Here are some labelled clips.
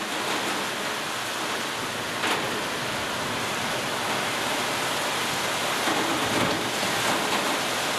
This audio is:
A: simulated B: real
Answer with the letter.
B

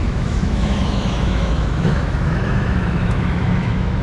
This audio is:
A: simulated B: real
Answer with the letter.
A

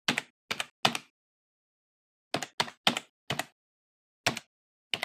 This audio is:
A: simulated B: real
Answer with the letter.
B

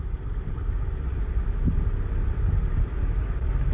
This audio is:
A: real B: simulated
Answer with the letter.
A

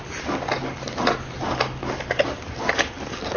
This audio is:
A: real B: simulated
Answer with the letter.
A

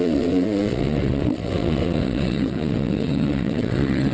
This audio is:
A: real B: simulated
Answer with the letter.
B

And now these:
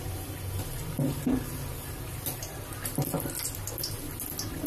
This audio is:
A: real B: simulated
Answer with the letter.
A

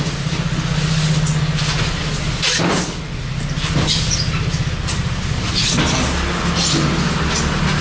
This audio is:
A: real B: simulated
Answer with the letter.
A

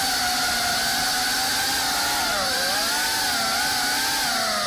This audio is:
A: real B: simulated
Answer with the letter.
A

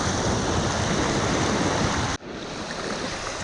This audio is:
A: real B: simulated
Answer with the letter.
A